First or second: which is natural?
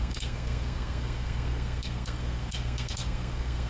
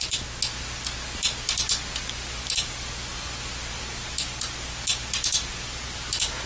second